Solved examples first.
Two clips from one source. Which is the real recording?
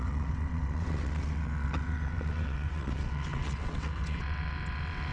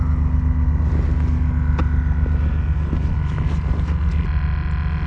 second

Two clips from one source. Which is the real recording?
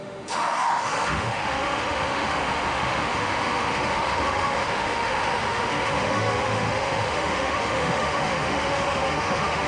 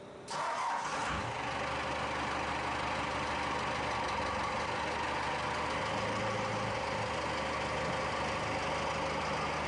second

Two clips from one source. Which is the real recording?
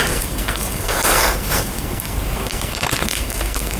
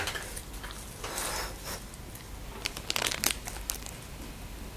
second